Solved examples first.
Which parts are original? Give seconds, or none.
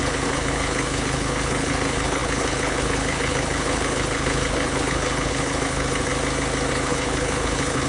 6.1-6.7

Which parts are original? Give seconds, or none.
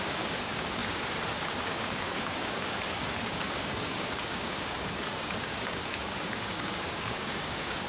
none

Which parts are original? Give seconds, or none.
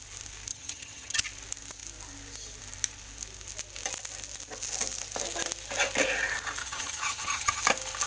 0.0-0.5; 1.2-6.6; 7.6-8.1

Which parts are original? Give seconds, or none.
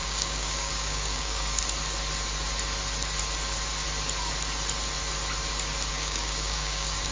1.6-5.9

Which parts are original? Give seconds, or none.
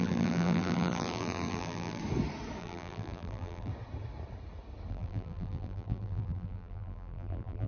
2.0-2.6; 3.7-4.9